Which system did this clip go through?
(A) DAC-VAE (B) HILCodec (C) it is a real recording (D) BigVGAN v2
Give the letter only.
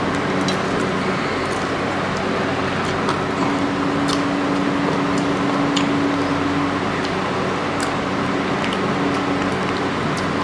C